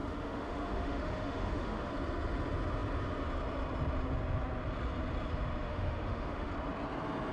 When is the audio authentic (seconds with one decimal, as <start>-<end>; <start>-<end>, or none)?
1.9-5.7; 6.5-7.3